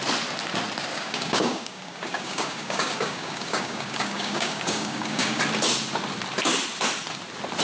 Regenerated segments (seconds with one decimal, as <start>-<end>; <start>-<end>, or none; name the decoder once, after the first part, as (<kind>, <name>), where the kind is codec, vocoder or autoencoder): 0.9-5.4 (codec, DAC)